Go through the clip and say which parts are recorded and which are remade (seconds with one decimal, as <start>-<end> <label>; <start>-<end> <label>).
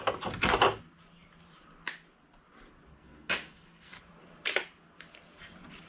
0.0-2.9 recorded; 2.9-4.0 remade; 4.0-5.9 recorded